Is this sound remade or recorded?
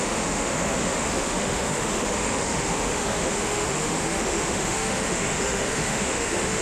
remade